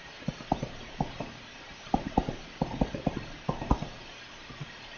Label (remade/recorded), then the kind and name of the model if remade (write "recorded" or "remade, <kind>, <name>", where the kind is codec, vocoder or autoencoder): recorded